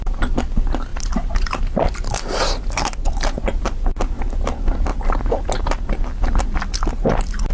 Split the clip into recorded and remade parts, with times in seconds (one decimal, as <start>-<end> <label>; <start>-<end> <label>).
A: 0.0-7.5 recorded